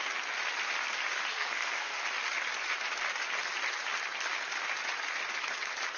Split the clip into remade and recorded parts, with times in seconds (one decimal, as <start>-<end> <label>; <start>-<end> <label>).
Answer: 0.0-1.3 recorded; 1.3-2.0 remade; 2.0-6.0 recorded